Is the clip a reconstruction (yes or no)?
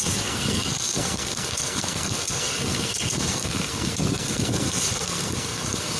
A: yes